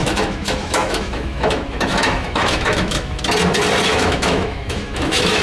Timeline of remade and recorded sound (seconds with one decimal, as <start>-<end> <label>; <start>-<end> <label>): 0.0-3.2 remade; 3.2-3.9 recorded; 3.9-5.4 remade